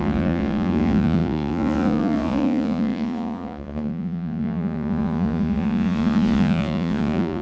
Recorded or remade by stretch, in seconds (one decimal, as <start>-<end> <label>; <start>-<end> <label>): 0.0-7.4 remade